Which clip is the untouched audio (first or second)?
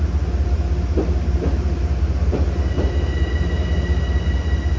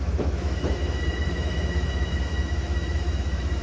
first